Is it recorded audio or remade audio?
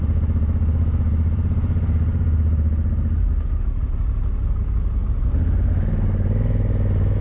recorded